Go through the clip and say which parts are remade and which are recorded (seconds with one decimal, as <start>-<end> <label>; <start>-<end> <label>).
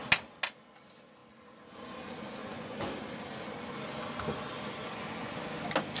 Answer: 0.0-2.4 recorded; 2.4-2.9 remade; 2.9-4.8 recorded; 4.8-5.4 remade; 5.4-6.0 recorded